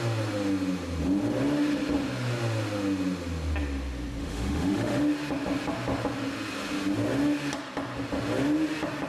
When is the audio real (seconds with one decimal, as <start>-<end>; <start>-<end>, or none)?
0.0-4.2; 5.0-9.1